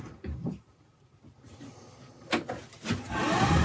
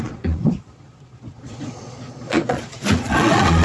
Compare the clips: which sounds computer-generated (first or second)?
second